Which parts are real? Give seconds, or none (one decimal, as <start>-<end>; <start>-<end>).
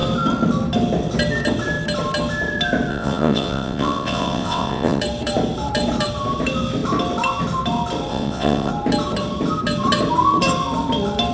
0.0-2.9; 5.0-8.1; 8.7-11.3